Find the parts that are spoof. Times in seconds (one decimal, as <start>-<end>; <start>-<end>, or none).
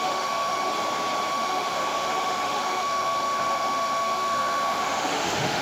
0.0-0.7; 1.3-5.6